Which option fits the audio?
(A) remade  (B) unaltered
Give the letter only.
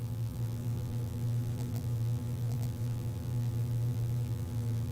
A